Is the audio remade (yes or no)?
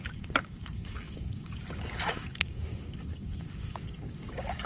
yes